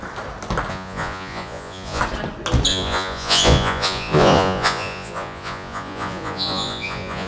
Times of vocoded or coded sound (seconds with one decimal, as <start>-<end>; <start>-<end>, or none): 0.7-2.0; 2.7-7.3